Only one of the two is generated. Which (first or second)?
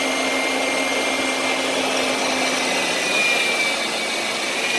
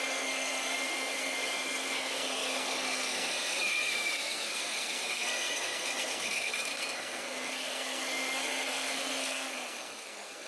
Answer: second